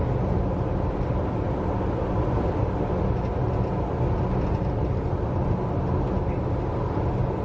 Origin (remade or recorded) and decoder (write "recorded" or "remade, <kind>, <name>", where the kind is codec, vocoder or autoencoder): recorded